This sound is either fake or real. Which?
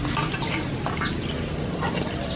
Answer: real